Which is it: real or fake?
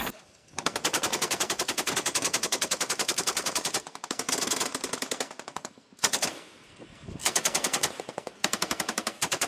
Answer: fake